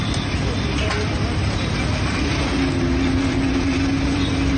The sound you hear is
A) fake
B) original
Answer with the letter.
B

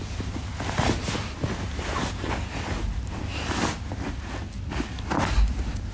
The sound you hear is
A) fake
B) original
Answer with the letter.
B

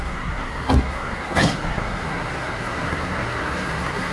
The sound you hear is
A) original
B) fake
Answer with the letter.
B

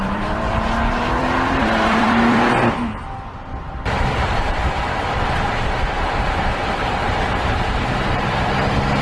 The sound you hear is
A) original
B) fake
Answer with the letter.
B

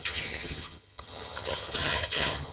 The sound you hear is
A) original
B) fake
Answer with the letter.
B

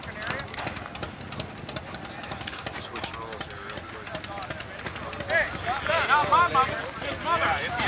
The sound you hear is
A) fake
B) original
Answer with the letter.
B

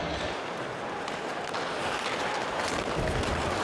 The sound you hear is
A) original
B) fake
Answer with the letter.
A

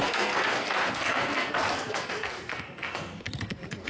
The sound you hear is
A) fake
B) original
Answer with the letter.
A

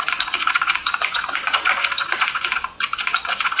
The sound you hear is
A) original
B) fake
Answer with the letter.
B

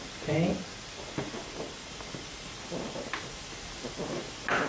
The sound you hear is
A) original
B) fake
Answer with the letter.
A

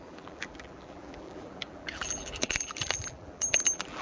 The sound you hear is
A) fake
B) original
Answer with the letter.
A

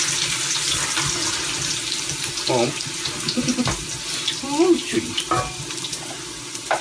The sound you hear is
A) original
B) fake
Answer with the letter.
A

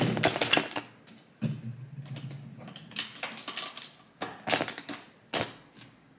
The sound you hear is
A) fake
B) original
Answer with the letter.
B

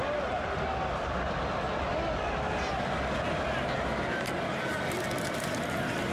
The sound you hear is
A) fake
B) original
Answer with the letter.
B